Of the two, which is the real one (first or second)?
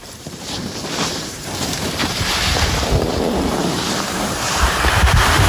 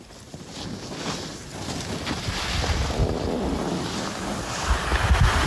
second